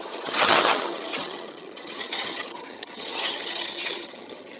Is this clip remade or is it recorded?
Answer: remade